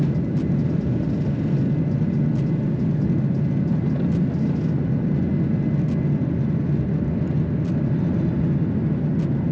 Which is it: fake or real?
real